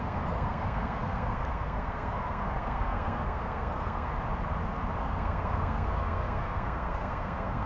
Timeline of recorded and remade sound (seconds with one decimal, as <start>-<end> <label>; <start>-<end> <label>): 0.0-4.1 remade; 4.1-5.0 recorded; 5.0-7.7 remade